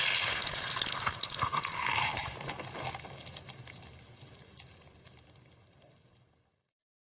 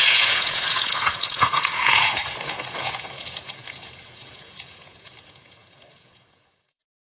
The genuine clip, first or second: first